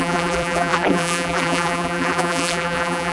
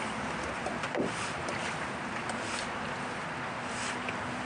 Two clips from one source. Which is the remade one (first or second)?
first